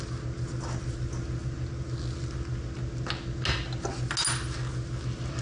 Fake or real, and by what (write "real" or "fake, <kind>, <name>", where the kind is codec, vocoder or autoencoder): real